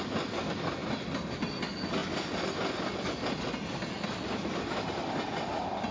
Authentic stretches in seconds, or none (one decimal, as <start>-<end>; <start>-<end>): 0.0-5.9